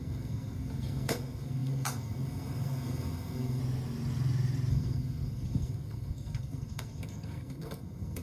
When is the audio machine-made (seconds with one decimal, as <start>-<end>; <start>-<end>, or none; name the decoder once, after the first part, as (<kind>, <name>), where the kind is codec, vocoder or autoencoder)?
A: 0.0-3.6 (codec, SNAC); 4.7-8.2